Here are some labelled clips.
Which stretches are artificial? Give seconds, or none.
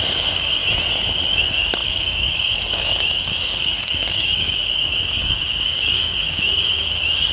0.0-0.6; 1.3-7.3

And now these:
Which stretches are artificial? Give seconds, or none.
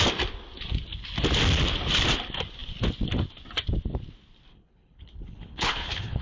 4.5-6.2